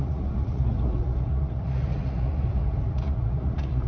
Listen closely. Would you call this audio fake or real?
fake